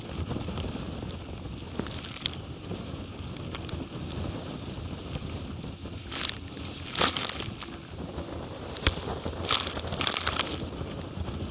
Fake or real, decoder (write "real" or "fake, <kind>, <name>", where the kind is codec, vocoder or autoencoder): real